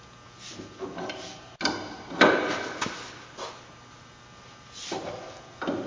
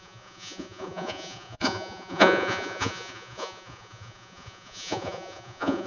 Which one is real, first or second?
first